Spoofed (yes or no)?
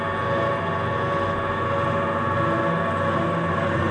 no